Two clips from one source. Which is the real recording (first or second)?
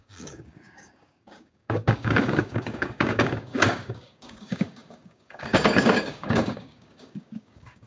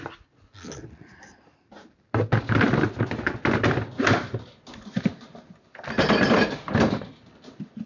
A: second